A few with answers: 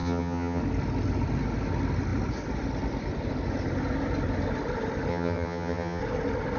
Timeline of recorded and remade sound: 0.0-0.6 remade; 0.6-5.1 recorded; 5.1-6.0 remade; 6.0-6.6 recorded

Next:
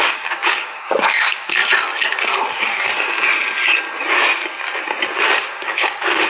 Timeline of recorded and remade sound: 0.0-1.6 remade; 1.6-5.4 recorded; 5.4-6.3 remade

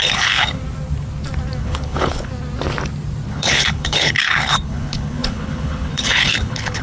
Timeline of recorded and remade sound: 0.0-0.6 remade; 0.6-1.6 recorded; 1.6-2.3 remade; 2.3-3.3 recorded; 3.3-6.8 remade

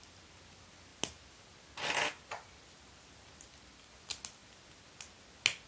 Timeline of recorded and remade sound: 0.0-5.7 recorded

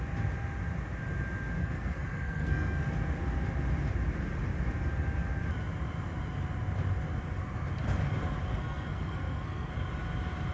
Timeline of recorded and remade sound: 0.0-1.6 recorded; 1.6-2.8 remade; 2.8-8.5 recorded; 8.5-9.7 remade; 9.7-10.5 recorded